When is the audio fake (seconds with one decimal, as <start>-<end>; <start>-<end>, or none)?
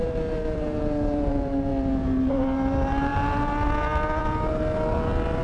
0.0-1.7; 2.3-5.4